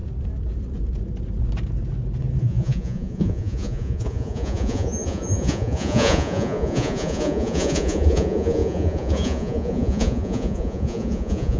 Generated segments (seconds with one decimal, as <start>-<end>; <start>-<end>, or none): 2.4-11.6